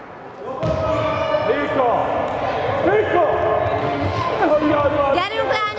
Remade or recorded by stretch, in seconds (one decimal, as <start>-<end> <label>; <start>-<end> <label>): 0.0-3.8 recorded; 3.8-4.7 remade; 4.7-5.8 recorded